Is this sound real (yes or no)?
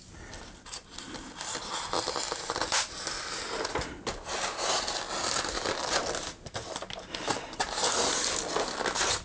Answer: yes